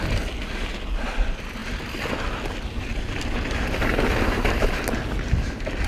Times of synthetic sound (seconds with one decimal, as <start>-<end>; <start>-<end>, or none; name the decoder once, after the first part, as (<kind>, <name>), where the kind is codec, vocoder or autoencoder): 3.9-4.7 (vocoder, BigVGAN v2)